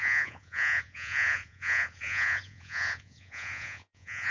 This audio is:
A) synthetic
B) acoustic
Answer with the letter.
A